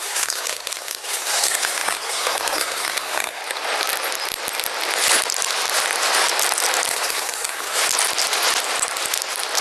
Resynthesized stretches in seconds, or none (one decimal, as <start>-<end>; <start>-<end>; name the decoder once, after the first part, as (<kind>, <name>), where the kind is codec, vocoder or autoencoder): 0.0-3.4 (codec, SNAC); 6.9-7.8